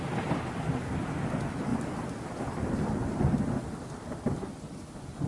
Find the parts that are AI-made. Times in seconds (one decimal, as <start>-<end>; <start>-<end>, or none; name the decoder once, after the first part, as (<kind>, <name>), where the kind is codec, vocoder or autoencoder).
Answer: none